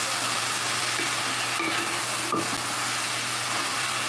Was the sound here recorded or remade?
recorded